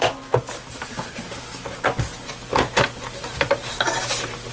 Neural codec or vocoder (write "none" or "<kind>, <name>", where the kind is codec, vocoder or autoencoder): none